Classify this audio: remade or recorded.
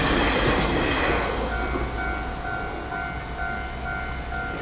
recorded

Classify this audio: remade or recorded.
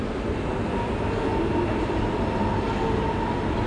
recorded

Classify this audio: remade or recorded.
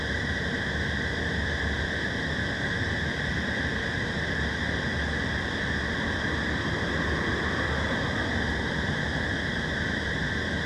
recorded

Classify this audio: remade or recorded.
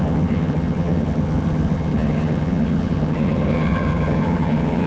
remade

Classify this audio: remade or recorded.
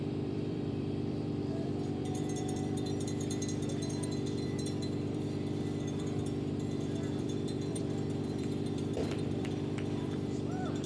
remade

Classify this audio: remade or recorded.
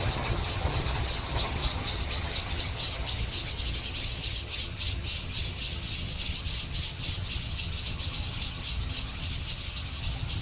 remade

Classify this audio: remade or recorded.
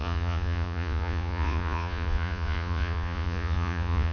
remade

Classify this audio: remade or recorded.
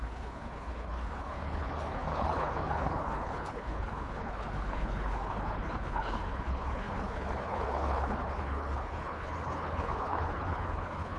remade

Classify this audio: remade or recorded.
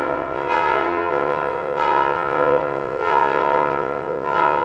remade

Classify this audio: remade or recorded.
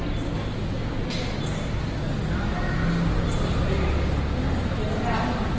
recorded